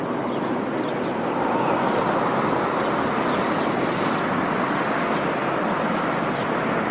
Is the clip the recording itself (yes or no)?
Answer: yes